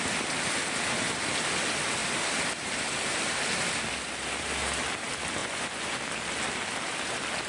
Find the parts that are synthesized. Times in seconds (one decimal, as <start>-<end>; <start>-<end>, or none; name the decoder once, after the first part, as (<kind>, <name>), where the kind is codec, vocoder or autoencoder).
5.4-6.0 (vocoder, Vocos)